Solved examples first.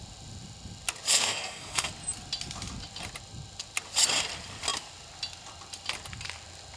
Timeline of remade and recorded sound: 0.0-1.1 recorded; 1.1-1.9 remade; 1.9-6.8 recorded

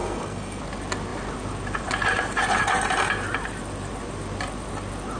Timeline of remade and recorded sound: 0.0-0.6 remade; 0.6-5.2 recorded

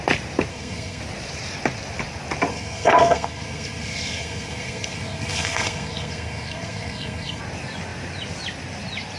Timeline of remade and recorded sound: 0.0-0.5 recorded; 0.5-1.0 remade; 1.0-2.5 recorded; 2.5-7.4 remade; 7.4-9.2 recorded

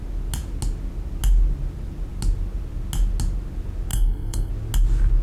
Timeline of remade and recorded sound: 0.0-3.9 recorded; 3.9-4.5 remade; 4.5-5.2 recorded

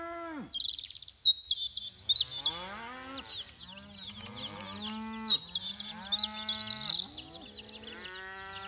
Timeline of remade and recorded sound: 0.0-8.7 recorded